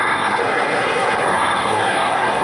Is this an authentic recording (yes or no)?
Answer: no